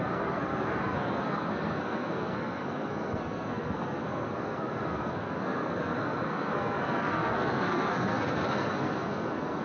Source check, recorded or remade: remade